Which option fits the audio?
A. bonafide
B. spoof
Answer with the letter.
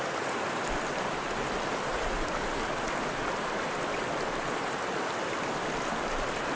A